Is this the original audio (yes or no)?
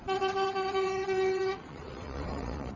no